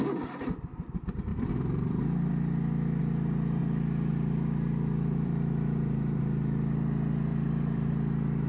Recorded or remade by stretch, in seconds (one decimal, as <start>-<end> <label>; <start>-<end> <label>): 0.0-1.3 recorded; 1.3-2.3 remade; 2.3-3.0 recorded; 3.0-3.6 remade; 3.6-4.1 recorded; 4.1-6.2 remade; 6.2-7.3 recorded; 7.3-7.9 remade; 7.9-8.5 recorded